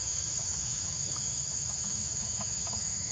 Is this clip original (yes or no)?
no